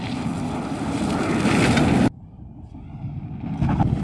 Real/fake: real